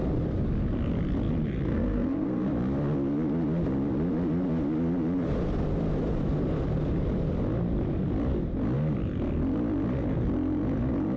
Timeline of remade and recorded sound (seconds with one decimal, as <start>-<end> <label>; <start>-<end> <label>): 0.0-1.7 recorded; 1.7-2.5 remade; 2.5-11.2 recorded